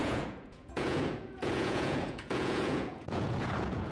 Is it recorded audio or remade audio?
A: remade